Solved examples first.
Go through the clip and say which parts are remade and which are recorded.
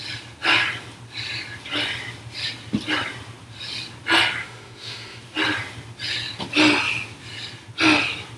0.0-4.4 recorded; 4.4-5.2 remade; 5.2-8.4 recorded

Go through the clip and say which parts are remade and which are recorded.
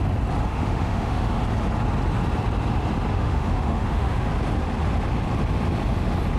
0.0-0.5 recorded; 0.5-1.4 remade; 1.4-3.1 recorded; 3.1-4.3 remade; 4.3-6.4 recorded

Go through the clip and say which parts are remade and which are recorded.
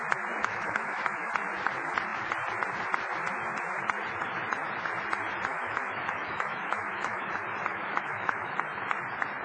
0.0-0.4 recorded; 0.4-1.3 remade; 1.3-5.5 recorded; 5.5-7.3 remade; 7.3-7.7 recorded; 7.7-8.6 remade; 8.6-9.4 recorded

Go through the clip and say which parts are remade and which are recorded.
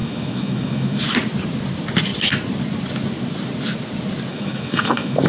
0.0-1.0 remade; 1.0-4.3 recorded; 4.3-5.3 remade